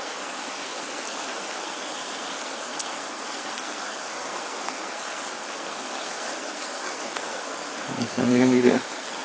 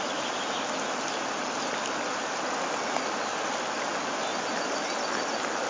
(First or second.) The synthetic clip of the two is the first